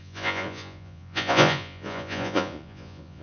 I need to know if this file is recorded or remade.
remade